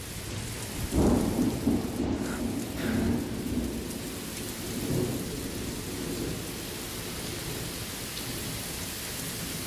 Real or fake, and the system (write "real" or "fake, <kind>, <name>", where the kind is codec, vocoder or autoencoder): real